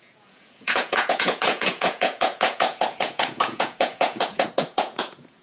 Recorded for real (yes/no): no